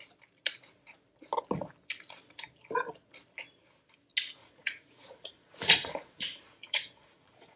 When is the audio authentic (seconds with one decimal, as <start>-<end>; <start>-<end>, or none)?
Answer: 0.0-4.4

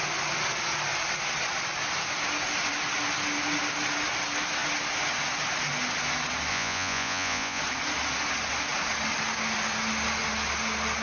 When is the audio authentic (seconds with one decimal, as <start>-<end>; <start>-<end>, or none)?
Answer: 0.0-6.5; 7.6-11.0